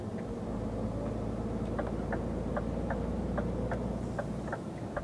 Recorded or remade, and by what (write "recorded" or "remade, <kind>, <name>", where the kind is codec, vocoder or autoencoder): recorded